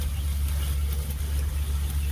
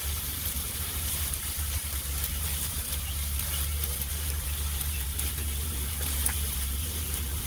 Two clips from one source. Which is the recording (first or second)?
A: first